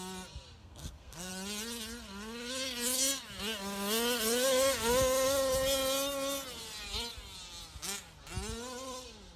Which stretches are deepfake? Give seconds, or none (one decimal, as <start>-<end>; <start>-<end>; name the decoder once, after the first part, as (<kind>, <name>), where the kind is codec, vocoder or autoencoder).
0.6-1.3 (codec, SNAC)